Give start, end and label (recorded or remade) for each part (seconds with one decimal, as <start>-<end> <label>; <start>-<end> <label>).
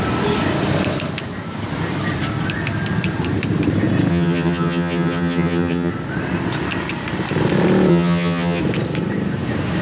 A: 0.0-4.1 recorded; 4.1-5.9 remade; 5.9-7.9 recorded; 7.9-8.6 remade; 8.6-9.8 recorded